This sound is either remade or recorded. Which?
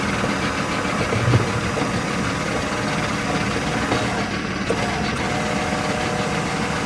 recorded